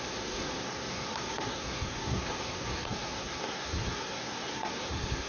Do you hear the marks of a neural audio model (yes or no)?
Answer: yes